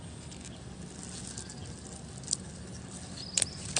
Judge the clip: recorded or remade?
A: recorded